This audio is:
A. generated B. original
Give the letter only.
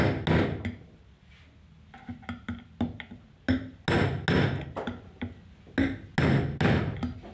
B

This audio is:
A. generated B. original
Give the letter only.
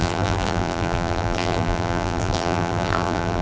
A